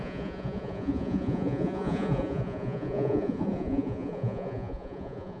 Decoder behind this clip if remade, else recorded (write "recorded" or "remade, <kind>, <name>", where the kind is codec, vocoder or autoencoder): remade, vocoder, Vocos